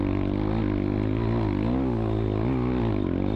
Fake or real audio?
real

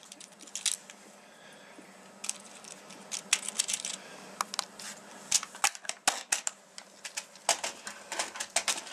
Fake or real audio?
real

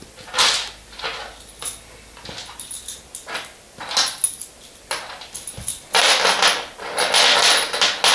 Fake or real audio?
real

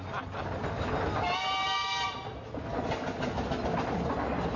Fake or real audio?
real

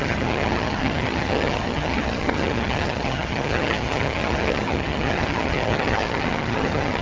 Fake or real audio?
fake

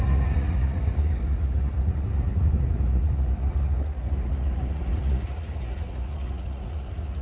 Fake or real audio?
fake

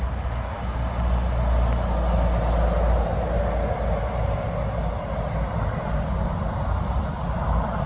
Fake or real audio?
real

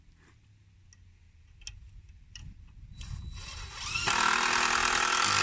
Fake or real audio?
real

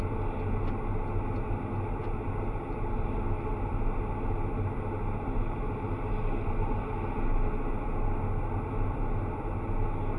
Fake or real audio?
real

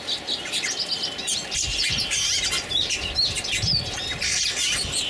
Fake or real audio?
real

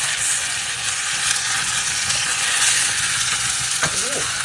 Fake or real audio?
fake